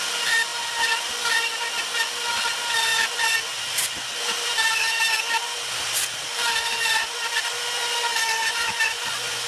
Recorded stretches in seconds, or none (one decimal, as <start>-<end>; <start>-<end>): 0.0-8.4